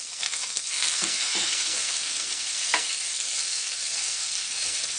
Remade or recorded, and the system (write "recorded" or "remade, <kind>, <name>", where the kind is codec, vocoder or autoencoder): remade, codec, SNAC